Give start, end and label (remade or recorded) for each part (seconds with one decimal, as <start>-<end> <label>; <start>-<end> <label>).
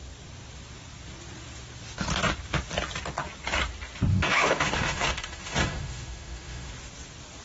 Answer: 0.0-4.1 recorded; 4.1-6.7 remade; 6.7-7.4 recorded